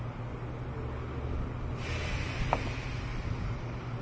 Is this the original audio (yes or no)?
yes